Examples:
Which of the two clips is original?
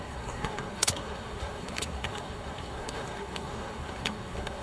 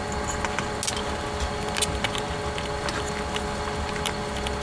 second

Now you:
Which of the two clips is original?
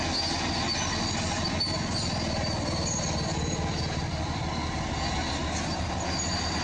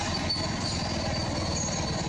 first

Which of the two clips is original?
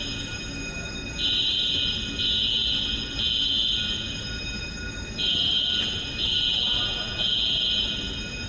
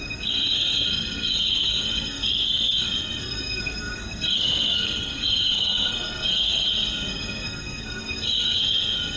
first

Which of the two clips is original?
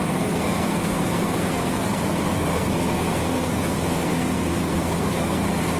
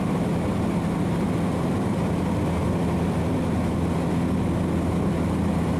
second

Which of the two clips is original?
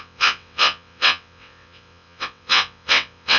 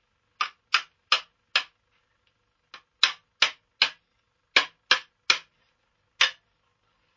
second